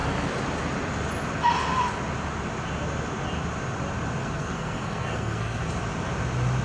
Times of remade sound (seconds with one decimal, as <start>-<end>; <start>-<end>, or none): 4.2-5.7